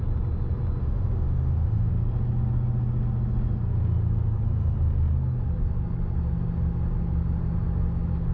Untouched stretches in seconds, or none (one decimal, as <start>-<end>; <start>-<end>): 0.0-0.8; 1.9-8.3